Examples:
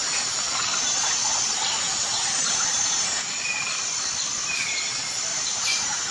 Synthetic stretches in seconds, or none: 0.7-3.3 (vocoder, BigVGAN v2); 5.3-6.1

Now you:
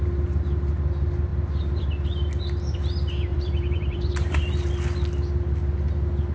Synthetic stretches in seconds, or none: 3.3-4.7 (vocoder, BigVGAN v2)